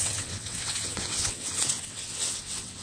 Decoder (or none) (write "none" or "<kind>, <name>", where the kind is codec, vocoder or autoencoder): vocoder, WaveNeXt